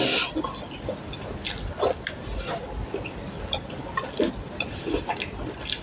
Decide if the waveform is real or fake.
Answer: real